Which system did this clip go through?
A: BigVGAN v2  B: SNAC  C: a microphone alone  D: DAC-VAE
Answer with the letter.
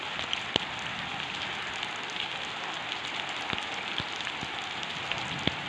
C